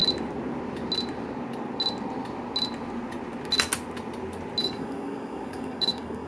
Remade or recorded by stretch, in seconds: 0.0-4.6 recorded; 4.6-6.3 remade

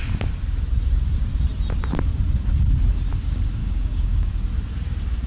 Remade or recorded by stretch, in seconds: 0.0-3.6 recorded; 3.6-4.3 remade; 4.3-5.3 recorded

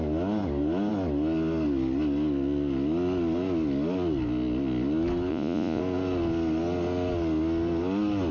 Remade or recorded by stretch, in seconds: 0.0-5.3 recorded; 5.3-5.8 remade; 5.8-8.3 recorded

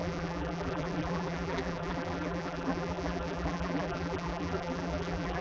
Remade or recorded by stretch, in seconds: 0.0-5.4 remade

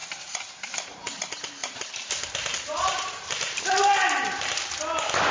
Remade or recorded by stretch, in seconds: 0.0-1.2 remade; 1.2-1.6 recorded; 1.6-4.8 remade; 4.8-5.3 recorded

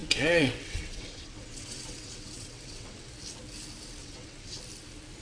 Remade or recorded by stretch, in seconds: 0.0-3.1 remade; 3.1-4.0 recorded; 4.0-4.6 remade; 4.6-5.2 recorded